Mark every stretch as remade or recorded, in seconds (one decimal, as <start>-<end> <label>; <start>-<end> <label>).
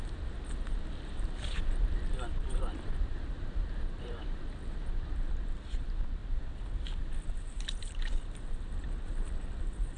0.0-6.2 remade; 6.2-7.8 recorded; 7.8-10.0 remade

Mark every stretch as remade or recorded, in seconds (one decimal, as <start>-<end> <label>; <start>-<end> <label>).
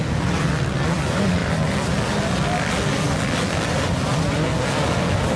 0.0-5.4 recorded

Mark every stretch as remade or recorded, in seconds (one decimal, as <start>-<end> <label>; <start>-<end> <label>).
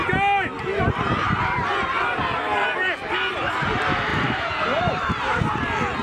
0.0-0.7 recorded; 0.7-2.2 remade; 2.2-4.1 recorded; 4.1-5.4 remade; 5.4-6.0 recorded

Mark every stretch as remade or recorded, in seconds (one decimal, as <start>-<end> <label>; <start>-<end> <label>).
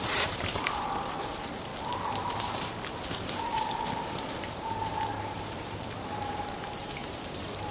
0.0-1.7 remade; 1.7-4.5 recorded; 4.5-7.7 remade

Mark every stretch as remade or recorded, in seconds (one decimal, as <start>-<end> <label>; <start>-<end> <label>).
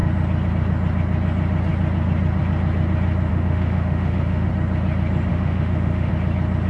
0.0-3.3 recorded; 3.3-4.5 remade; 4.5-5.3 recorded; 5.3-6.1 remade; 6.1-6.7 recorded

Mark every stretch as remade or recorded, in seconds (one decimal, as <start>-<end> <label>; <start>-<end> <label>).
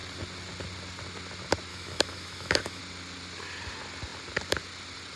0.0-1.7 recorded; 1.7-2.8 remade; 2.8-5.2 recorded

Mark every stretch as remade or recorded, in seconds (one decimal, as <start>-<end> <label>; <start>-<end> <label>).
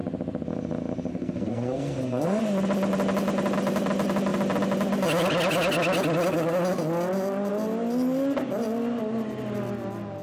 0.0-1.1 recorded; 1.1-2.4 remade; 2.4-10.2 recorded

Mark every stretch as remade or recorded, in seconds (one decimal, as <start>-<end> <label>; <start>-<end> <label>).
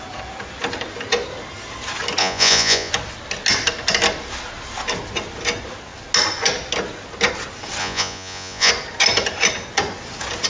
0.0-2.2 recorded; 2.2-2.9 remade; 2.9-7.8 recorded; 7.8-8.7 remade; 8.7-10.5 recorded